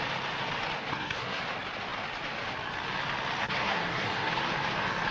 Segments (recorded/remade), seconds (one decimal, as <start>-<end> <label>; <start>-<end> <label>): 0.0-0.9 recorded; 0.9-1.4 remade; 1.4-3.4 recorded; 3.4-4.3 remade; 4.3-5.1 recorded